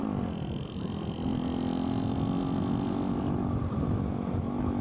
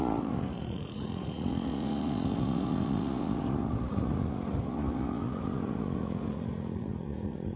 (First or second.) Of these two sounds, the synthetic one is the second